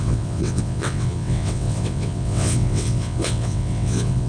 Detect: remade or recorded remade